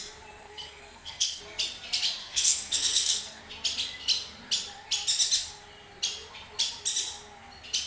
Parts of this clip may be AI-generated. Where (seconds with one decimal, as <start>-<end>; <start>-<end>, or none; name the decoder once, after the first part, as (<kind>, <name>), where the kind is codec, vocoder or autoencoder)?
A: 0.4-1.4 (codec, SNAC); 2.2-3.4